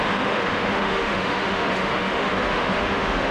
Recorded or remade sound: remade